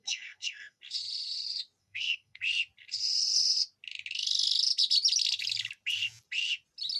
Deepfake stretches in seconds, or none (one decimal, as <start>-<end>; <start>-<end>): 0.0-0.8; 1.8-2.4